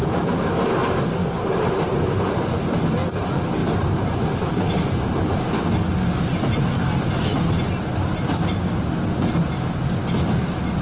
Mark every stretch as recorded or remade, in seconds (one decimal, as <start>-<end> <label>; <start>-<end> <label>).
0.0-1.2 recorded; 1.2-2.8 remade; 2.8-3.6 recorded; 3.6-6.0 remade; 6.0-10.8 recorded